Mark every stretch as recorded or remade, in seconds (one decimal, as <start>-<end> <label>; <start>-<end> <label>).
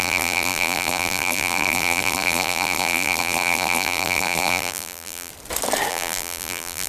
0.0-5.3 remade; 5.3-5.9 recorded; 5.9-6.9 remade